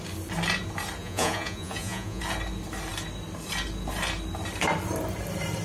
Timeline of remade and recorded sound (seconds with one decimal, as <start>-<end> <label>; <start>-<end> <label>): 0.0-1.0 recorded; 1.0-2.2 remade; 2.2-5.6 recorded